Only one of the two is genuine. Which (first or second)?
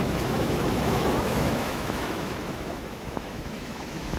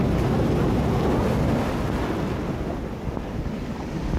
second